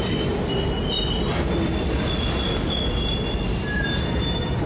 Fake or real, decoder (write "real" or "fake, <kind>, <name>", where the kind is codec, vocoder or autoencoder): real